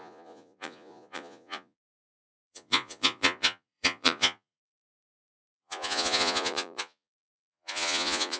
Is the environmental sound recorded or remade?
remade